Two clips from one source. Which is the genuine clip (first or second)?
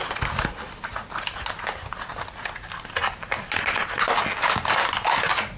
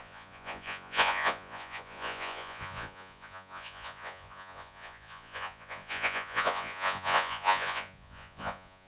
first